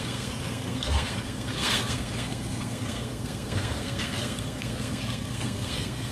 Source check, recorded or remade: remade